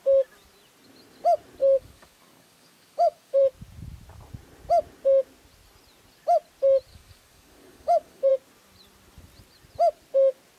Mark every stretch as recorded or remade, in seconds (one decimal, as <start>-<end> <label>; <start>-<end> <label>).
0.0-1.6 recorded; 1.6-3.4 remade; 3.4-6.9 recorded; 6.9-8.3 remade; 8.3-10.6 recorded